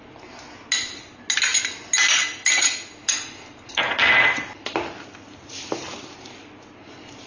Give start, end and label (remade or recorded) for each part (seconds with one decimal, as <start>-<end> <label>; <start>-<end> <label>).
0.0-7.3 recorded